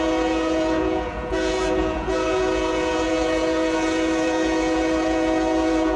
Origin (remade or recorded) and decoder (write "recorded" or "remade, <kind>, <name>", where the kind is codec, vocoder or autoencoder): remade, vocoder, Vocos